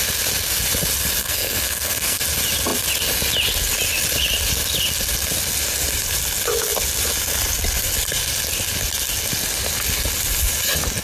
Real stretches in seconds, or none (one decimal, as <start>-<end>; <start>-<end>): 0.0-1.2; 2.2-11.0